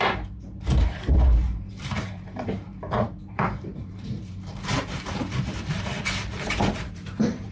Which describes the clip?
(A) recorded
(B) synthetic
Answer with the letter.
B